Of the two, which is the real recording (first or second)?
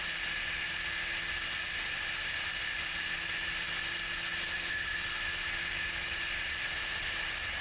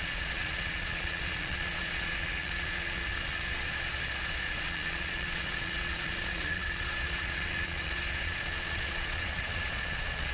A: first